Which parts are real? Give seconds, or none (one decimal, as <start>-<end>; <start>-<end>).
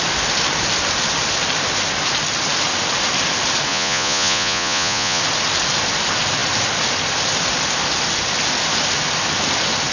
0.0-3.7; 5.2-9.9